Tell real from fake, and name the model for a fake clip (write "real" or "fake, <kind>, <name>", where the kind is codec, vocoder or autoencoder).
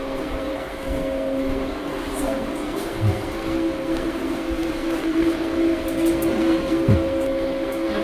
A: fake, codec, SNAC